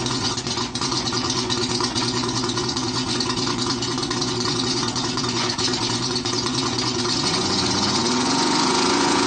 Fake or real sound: fake